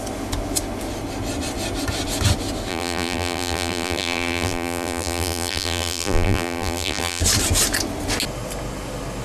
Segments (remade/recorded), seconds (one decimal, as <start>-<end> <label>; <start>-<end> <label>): 0.0-2.7 recorded; 2.7-7.2 remade; 7.2-9.2 recorded

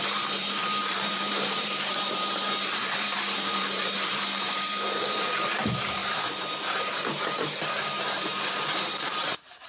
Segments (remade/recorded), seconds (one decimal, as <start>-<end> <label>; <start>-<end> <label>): 0.0-9.7 remade

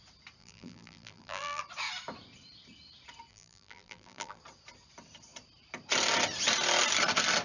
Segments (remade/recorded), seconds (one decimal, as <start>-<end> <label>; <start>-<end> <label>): 0.0-0.4 recorded; 0.4-1.6 remade; 1.6-3.3 recorded; 3.3-4.4 remade; 4.4-7.4 recorded

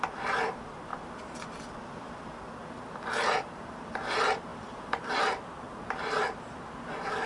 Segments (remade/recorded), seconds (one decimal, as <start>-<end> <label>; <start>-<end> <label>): 0.0-0.9 remade; 0.9-2.9 recorded; 2.9-7.3 remade

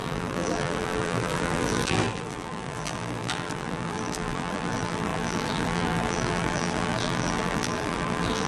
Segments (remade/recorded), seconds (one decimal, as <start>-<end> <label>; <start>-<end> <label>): 0.0-8.5 remade

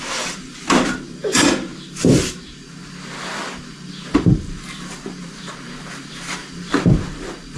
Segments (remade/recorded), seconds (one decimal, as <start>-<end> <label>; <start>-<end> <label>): 0.0-2.8 remade; 2.8-4.1 recorded; 4.1-7.6 remade

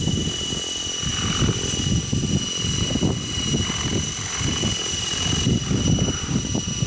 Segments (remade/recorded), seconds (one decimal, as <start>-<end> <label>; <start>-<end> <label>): 0.0-6.9 recorded

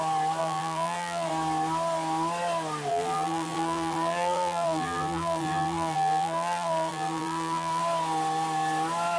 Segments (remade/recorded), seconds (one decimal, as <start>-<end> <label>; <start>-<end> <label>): 0.0-0.4 recorded; 0.4-1.3 remade; 1.3-2.9 recorded; 2.9-7.8 remade; 7.8-9.2 recorded